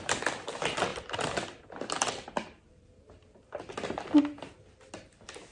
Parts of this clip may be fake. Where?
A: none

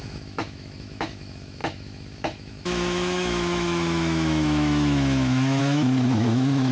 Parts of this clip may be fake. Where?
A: 0.0-6.7

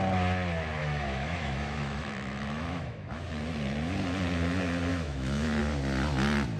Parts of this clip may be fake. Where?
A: 0.8-3.3; 4.9-5.6

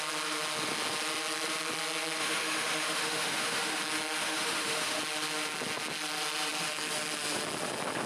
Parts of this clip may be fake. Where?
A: 2.2-3.8; 4.2-5.0

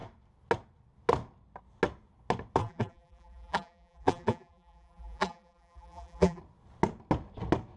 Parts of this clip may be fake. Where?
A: 2.6-6.4